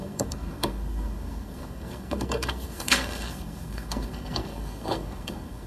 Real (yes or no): no